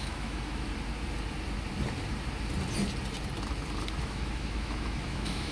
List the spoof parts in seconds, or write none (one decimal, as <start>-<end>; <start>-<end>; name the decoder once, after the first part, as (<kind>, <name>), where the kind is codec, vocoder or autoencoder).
0.0-0.7 (autoencoder, DAC-VAE); 4.0-5.5